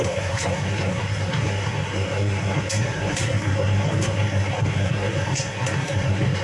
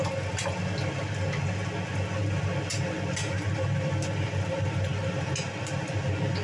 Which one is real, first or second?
second